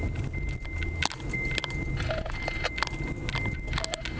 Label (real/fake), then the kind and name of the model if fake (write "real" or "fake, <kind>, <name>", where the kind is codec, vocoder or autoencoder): real